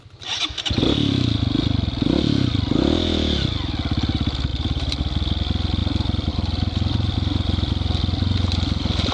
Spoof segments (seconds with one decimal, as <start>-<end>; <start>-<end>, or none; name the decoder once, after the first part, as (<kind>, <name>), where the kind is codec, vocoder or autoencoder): 4.5-5.0 (vocoder, BigVGAN v2)